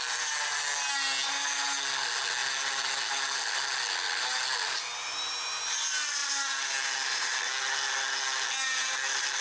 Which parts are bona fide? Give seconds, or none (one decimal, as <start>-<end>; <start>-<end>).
0.0-9.4